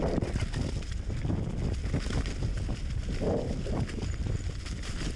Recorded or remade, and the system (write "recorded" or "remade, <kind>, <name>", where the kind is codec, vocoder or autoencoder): recorded